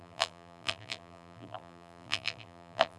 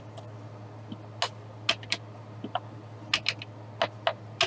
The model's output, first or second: first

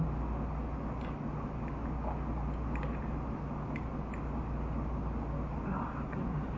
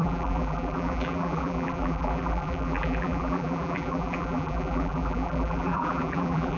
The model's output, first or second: second